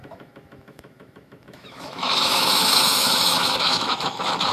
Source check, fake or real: fake